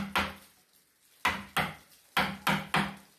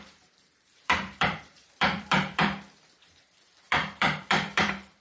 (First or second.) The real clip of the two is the first